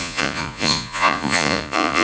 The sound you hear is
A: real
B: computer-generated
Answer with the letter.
B